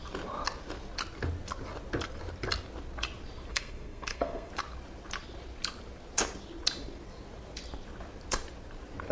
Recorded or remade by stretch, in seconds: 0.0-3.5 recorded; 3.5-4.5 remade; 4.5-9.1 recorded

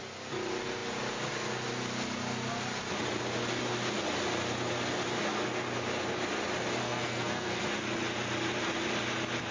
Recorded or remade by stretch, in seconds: 0.0-6.8 recorded; 6.8-7.6 remade; 7.6-9.5 recorded

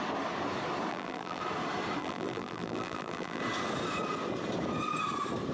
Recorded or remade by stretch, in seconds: 0.0-0.9 recorded; 0.9-1.4 remade; 1.4-2.0 recorded; 2.0-3.4 remade; 3.4-5.5 recorded

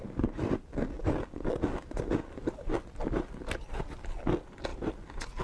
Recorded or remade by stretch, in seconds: 0.0-5.4 recorded